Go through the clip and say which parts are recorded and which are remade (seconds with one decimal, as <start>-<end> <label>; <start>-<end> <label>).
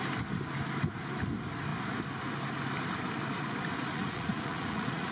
0.0-3.9 recorded; 3.9-5.1 remade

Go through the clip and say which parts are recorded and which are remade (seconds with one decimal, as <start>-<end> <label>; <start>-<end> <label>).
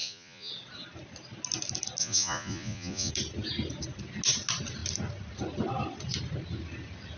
0.0-0.5 remade; 0.5-2.0 recorded; 2.0-3.1 remade; 3.1-7.2 recorded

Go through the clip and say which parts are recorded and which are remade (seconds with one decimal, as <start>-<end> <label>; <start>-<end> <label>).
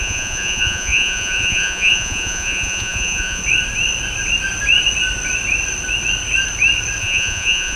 0.0-3.4 remade; 3.4-7.0 recorded; 7.0-7.8 remade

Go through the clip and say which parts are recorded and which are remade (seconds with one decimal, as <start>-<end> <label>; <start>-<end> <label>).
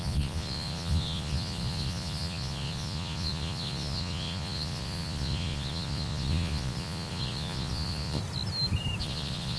0.0-8.2 remade; 8.2-9.0 recorded; 9.0-9.6 remade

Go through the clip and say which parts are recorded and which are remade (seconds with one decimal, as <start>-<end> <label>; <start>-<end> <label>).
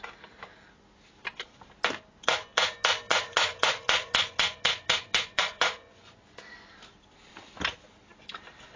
0.0-3.1 recorded; 3.1-6.6 remade; 6.6-8.8 recorded